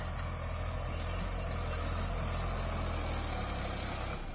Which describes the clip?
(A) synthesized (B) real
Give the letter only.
B